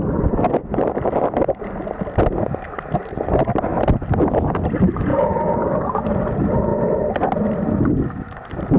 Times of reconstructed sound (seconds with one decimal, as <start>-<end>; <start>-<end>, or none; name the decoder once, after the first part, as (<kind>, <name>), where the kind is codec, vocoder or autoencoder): 5.1-5.8 (codec, DAC)